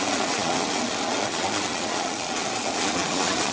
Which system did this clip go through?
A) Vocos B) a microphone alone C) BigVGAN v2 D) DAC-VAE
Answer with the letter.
A